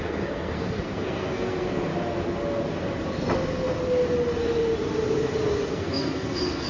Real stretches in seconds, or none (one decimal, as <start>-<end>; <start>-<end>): 1.9-5.7